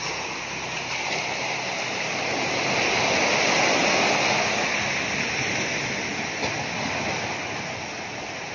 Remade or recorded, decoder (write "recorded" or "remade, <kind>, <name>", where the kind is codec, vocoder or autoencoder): recorded